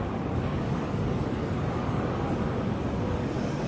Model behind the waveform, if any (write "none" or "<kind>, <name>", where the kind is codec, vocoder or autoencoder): codec, DAC